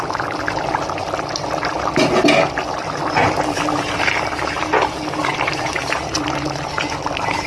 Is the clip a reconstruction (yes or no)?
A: no